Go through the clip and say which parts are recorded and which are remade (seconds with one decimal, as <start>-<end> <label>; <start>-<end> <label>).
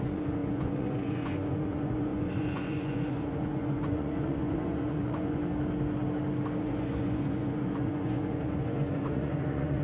0.0-5.4 remade; 5.4-6.6 recorded; 6.6-9.8 remade